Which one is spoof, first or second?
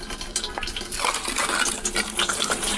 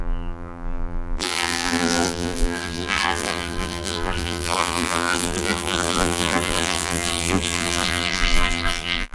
second